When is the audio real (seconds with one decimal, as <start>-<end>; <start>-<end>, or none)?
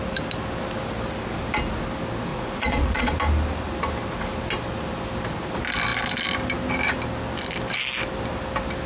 0.0-2.3; 3.1-8.9